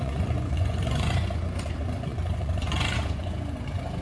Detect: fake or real fake